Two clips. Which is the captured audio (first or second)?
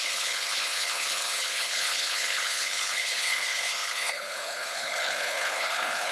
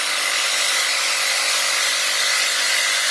second